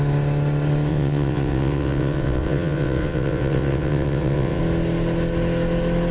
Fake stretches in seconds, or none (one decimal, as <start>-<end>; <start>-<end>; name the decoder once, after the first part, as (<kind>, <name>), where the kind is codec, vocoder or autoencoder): 0.9-4.6 (vocoder, WaveNeXt)